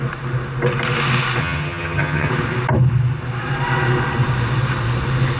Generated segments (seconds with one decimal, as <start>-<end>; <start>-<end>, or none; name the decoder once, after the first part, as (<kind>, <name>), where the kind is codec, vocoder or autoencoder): 1.4-2.3 (vocoder, HiFi-GAN)